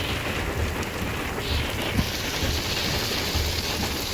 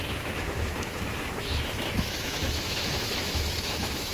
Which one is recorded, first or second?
first